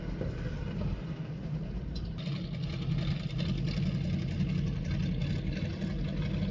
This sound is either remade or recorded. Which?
recorded